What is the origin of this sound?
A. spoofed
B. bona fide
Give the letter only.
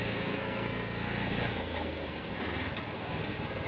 A